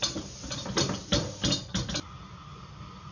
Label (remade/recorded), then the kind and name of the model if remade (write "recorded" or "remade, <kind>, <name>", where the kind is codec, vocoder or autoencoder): recorded